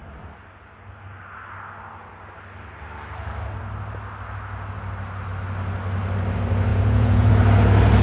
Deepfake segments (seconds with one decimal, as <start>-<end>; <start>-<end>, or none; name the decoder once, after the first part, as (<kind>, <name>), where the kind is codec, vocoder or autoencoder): 6.7-7.3 (vocoder, Vocos)